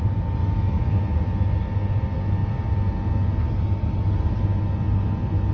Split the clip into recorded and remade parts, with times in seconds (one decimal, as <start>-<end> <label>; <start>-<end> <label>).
0.0-0.4 recorded; 0.4-1.0 remade; 1.0-5.5 recorded